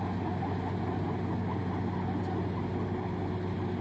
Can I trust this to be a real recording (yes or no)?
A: yes